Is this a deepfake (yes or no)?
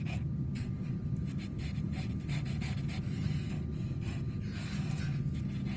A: no